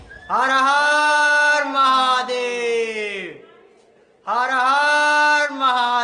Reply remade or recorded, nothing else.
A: recorded